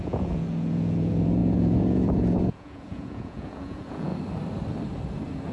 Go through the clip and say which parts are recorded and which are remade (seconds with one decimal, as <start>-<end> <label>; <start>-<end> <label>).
0.0-4.1 remade; 4.1-5.5 recorded